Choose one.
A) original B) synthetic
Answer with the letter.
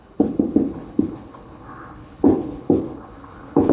B